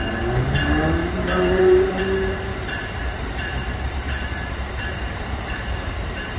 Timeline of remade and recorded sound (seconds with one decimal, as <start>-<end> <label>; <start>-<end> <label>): 0.0-1.0 recorded; 1.0-2.0 remade; 2.0-2.5 recorded; 2.5-5.9 remade; 5.9-6.4 recorded